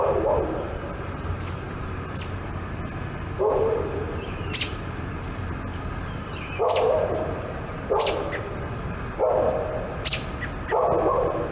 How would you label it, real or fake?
real